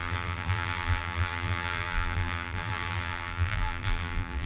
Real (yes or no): no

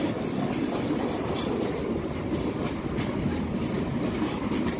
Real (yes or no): yes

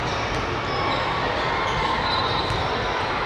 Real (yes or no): yes